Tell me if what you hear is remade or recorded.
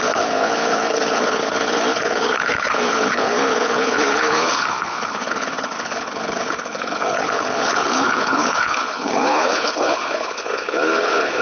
remade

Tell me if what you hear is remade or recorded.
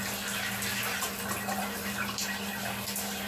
remade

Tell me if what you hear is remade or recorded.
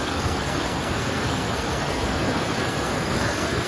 remade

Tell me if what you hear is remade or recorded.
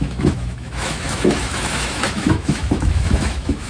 remade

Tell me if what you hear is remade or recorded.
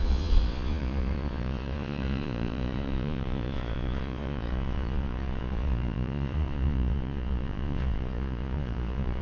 remade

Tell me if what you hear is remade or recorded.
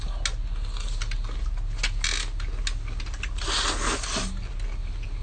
recorded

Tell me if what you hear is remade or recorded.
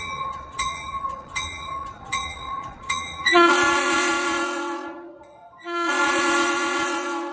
remade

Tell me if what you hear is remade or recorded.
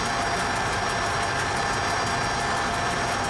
recorded